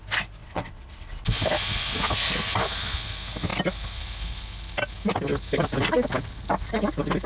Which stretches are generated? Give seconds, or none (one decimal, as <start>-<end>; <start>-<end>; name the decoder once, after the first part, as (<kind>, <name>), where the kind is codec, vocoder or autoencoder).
0.4-1.2 (vocoder, WaveNeXt)

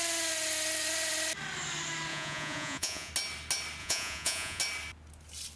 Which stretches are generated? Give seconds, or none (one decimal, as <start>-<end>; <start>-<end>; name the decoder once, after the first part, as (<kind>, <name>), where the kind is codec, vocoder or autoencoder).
2.1-3.1 (vocoder, Vocos); 3.8-4.6

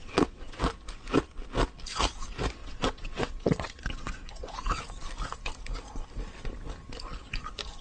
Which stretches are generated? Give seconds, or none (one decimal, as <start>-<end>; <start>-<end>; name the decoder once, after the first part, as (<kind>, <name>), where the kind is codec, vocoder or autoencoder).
0.0-0.7 (vocoder, WaveNeXt); 2.6-4.8

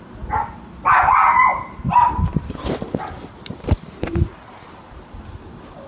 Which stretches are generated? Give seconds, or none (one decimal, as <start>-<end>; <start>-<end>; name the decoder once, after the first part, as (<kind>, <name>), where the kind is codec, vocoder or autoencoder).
1.5-4.7 (vocoder, BigVGAN v2)